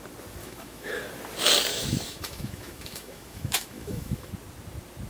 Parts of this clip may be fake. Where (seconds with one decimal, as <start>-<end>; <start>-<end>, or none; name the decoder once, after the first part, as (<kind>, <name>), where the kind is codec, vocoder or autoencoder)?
0.4-0.9 (autoencoder, DAC-VAE); 1.7-4.3